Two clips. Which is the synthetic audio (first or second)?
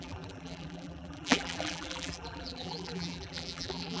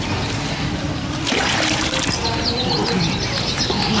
first